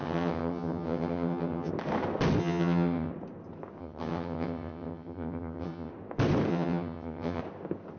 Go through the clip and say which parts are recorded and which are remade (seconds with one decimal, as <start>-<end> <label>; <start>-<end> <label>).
0.0-1.7 remade; 1.7-2.4 recorded; 2.4-3.1 remade; 3.1-3.8 recorded; 3.8-5.9 remade; 5.9-6.5 recorded; 6.5-7.4 remade; 7.4-8.0 recorded